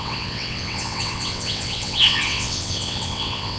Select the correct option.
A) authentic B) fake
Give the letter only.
B